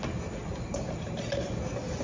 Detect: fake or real real